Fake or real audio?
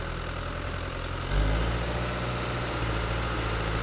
real